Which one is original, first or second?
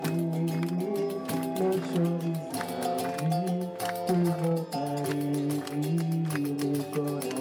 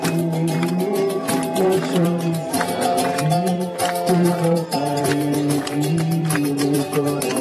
first